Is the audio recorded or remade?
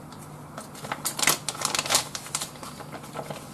recorded